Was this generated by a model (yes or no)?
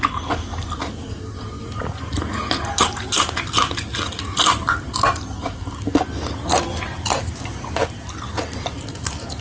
no